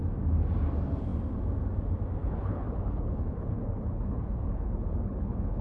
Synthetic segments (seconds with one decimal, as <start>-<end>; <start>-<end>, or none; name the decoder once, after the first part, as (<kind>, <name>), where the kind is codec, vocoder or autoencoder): 2.2-5.6 (codec, HILCodec)